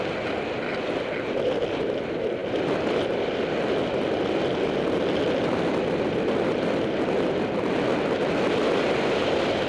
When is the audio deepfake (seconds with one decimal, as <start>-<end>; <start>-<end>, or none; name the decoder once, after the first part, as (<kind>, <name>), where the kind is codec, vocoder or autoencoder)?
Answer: none